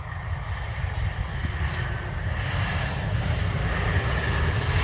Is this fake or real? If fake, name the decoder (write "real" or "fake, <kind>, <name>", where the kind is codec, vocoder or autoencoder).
real